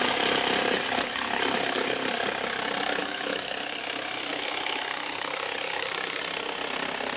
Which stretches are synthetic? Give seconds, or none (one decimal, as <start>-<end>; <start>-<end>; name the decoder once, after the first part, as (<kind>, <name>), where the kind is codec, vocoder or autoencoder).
0.6-2.2 (codec, DAC); 3.0-3.8; 4.3-6.2